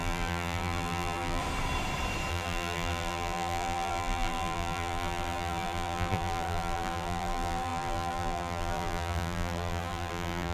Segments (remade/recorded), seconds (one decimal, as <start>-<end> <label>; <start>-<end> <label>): 0.0-1.4 remade; 1.4-2.3 recorded; 2.3-10.5 remade